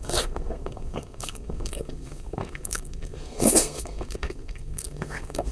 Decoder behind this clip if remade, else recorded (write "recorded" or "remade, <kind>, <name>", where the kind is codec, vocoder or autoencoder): remade, codec, SNAC